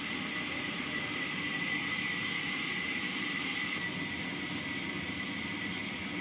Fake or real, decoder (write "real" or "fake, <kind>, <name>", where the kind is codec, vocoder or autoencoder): real